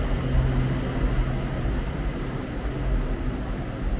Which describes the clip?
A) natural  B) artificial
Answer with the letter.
A